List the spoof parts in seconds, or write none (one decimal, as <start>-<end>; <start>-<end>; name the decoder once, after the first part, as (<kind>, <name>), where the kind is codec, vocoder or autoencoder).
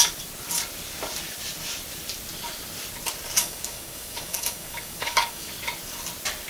3.4-5.5 (codec, DAC)